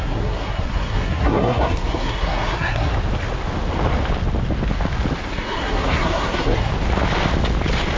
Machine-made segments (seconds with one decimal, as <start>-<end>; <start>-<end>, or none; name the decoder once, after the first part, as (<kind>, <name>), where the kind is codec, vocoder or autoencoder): 0.0-2.9 (codec, SNAC); 5.3-6.7